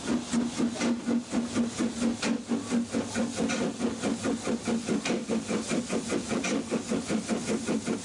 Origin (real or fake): real